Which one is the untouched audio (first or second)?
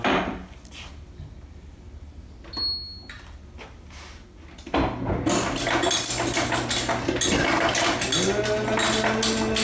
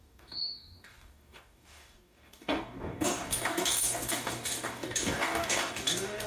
first